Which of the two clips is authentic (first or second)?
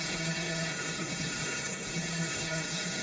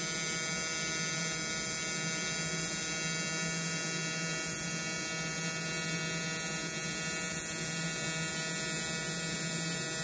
second